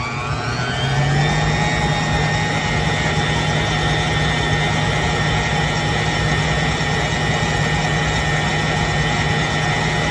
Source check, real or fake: real